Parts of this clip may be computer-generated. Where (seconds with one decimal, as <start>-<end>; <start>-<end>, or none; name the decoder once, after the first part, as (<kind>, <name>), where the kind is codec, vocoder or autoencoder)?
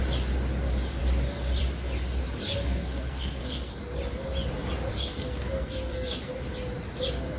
2.4-3.8 (codec, SNAC); 4.9-6.3